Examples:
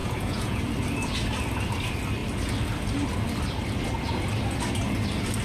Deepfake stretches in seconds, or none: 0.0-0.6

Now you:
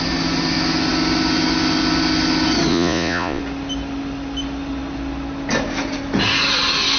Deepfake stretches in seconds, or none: 2.7-3.4

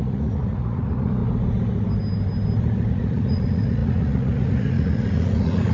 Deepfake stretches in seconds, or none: 0.0-1.2; 2.9-5.7

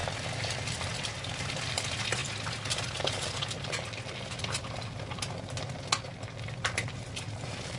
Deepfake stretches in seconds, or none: none

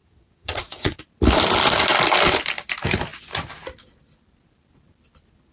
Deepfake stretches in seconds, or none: 0.0-1.0

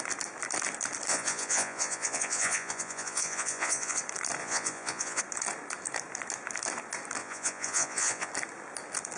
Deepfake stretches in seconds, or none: 1.1-4.0; 4.4-5.2; 7.2-8.3

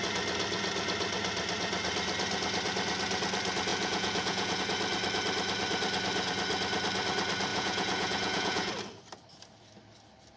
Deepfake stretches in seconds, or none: 3.7-4.6; 7.5-8.7

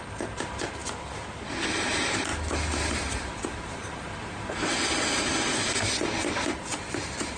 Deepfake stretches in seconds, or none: none